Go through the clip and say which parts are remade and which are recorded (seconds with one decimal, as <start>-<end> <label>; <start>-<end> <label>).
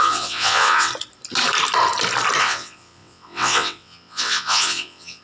0.0-0.9 remade; 0.9-2.4 recorded; 2.4-5.2 remade